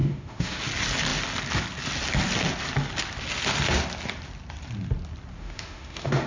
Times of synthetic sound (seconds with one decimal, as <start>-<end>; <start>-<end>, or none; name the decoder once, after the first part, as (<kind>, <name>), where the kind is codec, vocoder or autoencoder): 0.0-0.6 (autoencoder, DAC-VAE); 5.4-6.3